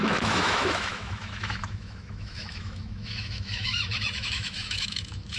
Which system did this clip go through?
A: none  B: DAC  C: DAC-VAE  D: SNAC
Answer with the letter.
C